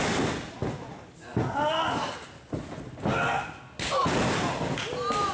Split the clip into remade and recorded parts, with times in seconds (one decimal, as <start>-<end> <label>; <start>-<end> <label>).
0.0-5.3 recorded